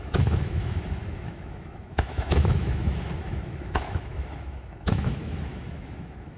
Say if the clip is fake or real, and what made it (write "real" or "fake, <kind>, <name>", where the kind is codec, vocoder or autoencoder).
fake, autoencoder, DAC-VAE